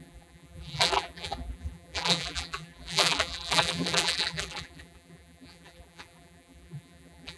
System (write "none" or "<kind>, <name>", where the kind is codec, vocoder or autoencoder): vocoder, BigVGAN v2